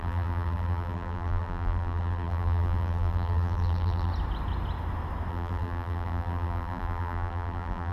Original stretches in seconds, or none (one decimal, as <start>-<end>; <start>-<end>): 4.1-5.3